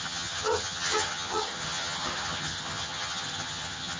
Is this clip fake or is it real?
fake